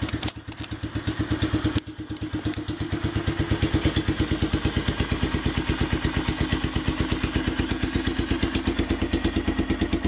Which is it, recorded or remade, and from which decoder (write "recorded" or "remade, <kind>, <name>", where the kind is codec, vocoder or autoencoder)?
recorded